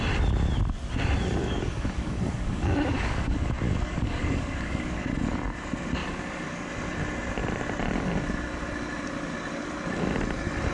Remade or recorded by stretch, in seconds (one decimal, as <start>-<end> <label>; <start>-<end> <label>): 0.0-1.4 recorded; 1.4-5.1 remade; 5.1-6.0 recorded; 6.0-6.7 remade; 6.7-10.7 recorded